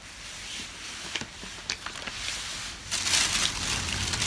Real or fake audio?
real